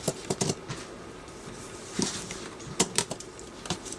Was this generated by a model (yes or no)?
no